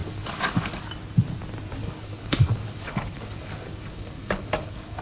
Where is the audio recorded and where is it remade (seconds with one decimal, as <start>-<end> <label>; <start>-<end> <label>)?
0.0-0.8 remade; 0.8-1.8 recorded; 1.8-5.0 remade